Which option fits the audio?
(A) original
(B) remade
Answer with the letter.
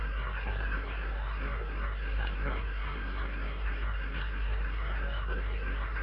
B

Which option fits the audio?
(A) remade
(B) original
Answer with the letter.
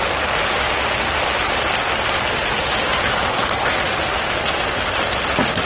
B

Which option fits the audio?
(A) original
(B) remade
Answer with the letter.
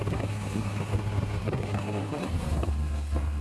B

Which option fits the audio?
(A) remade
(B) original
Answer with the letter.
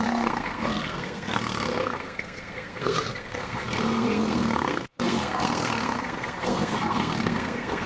A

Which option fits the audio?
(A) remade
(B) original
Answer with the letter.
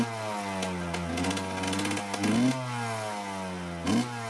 B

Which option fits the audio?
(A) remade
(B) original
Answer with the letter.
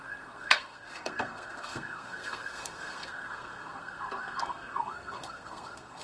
A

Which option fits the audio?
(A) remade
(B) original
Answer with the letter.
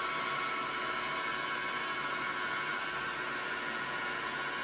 B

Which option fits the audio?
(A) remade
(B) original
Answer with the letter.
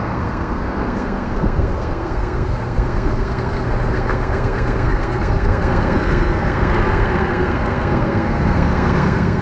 A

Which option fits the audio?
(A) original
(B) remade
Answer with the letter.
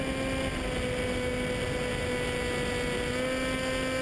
A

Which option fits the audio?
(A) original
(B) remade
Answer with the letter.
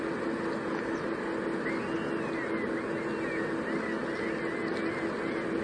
A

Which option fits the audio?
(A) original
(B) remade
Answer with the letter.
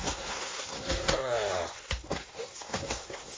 B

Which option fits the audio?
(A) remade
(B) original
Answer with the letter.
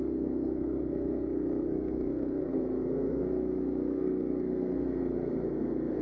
A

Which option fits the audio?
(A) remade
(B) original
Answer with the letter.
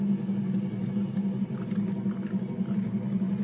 B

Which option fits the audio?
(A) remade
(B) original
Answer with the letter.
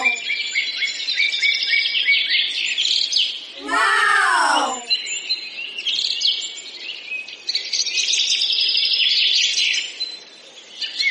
B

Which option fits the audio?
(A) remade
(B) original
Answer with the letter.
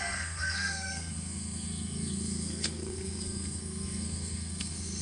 A